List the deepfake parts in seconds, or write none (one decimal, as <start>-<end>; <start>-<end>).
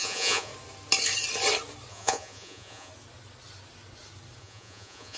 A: 0.0-0.5; 1.9-2.9; 4.4-5.2